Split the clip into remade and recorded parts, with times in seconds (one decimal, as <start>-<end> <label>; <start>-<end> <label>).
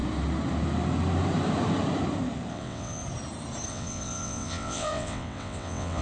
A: 0.0-2.5 recorded; 2.5-3.0 remade; 3.0-3.7 recorded; 3.7-6.0 remade